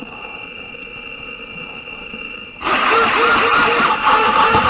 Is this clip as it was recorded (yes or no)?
yes